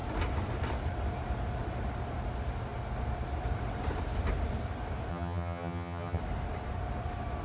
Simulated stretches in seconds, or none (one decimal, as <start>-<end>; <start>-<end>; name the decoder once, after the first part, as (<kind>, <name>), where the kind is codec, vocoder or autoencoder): 5.1-6.2 (vocoder, HiFi-GAN)